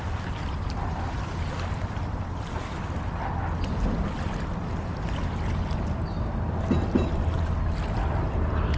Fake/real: real